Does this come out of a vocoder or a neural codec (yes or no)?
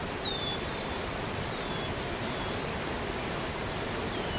no